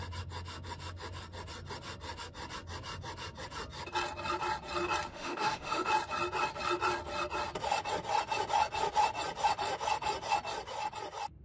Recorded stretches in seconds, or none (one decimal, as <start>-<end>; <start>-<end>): 0.0-5.1; 5.9-11.4